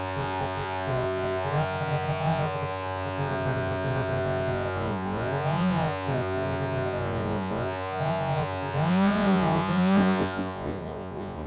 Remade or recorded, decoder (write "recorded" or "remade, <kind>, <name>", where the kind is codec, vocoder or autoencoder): remade, vocoder, Vocos